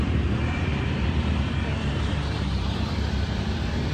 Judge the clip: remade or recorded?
remade